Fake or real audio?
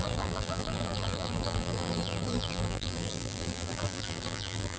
fake